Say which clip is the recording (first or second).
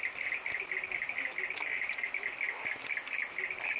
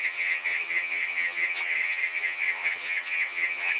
first